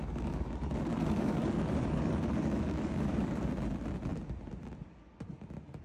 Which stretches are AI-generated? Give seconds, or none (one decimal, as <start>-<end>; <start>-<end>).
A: 0.0-3.5